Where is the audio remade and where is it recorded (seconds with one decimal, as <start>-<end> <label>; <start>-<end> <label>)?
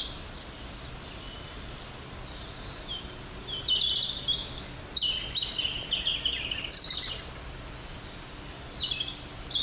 0.0-9.6 recorded